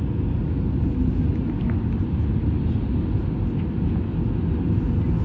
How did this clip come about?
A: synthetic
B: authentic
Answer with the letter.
B